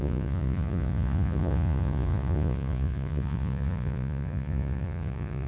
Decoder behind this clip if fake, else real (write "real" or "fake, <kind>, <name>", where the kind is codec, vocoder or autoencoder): fake, vocoder, Vocos